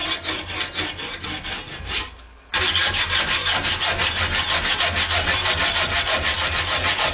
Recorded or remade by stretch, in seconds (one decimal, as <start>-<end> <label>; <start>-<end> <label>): 0.0-7.1 recorded